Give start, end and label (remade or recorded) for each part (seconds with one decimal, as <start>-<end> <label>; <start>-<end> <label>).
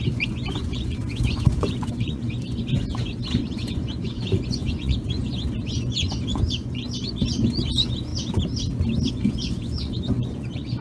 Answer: 0.0-8.1 remade; 8.1-9.1 recorded; 9.1-10.8 remade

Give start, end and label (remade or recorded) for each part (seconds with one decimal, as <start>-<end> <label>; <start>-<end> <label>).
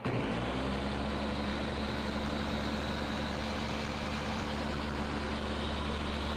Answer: 0.0-6.4 recorded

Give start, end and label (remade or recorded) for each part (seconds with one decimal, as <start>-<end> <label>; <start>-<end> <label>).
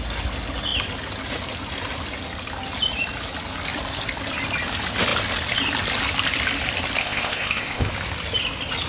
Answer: 0.0-7.0 recorded; 7.0-7.9 remade; 7.9-8.9 recorded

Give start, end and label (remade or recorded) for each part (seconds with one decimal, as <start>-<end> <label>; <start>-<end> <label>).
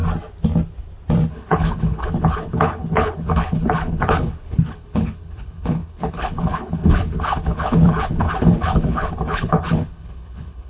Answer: 0.0-1.3 recorded; 1.3-10.7 remade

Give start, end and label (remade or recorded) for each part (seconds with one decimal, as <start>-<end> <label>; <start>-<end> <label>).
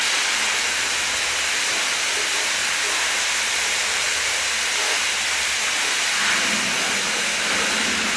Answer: 0.0-2.6 recorded; 2.6-4.8 remade; 4.8-8.2 recorded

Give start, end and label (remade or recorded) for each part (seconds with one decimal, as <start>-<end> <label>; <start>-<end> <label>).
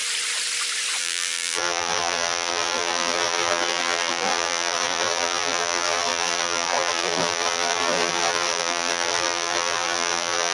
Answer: 0.0-1.0 recorded; 1.0-10.5 remade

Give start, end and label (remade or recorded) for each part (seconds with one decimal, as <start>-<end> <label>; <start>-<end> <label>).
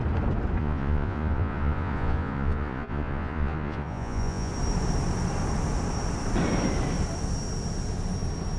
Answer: 0.0-0.6 recorded; 0.6-4.5 remade; 4.5-8.6 recorded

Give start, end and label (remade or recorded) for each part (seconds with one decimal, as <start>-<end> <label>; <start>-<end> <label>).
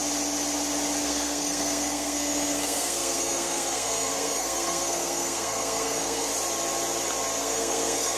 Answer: 0.0-1.0 recorded; 1.0-6.3 remade; 6.3-7.4 recorded; 7.4-8.2 remade